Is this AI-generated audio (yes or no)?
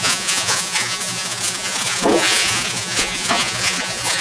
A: yes